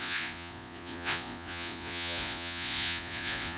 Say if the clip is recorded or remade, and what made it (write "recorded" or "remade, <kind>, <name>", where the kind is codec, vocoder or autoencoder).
remade, vocoder, Vocos